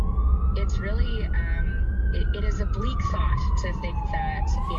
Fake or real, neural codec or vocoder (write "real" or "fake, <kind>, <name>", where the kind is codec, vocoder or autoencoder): real